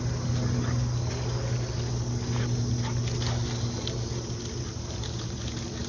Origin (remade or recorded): recorded